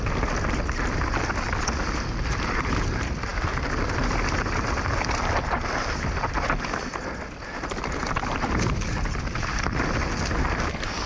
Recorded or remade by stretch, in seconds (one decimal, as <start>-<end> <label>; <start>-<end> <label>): 0.0-11.1 recorded